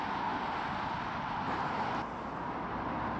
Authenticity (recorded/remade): recorded